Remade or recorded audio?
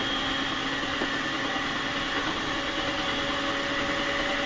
recorded